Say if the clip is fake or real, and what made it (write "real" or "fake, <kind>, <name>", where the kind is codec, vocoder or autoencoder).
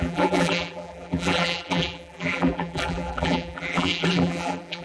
fake, vocoder, BigVGAN v2